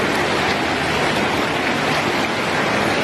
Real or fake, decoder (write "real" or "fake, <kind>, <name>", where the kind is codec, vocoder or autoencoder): real